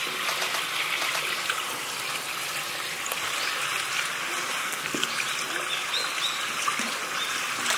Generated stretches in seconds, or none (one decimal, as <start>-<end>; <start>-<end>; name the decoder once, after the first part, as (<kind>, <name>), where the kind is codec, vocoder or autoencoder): 4.6-5.1 (codec, SNAC)